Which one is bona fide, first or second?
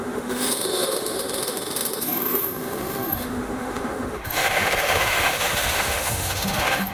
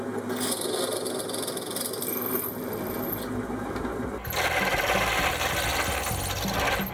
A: second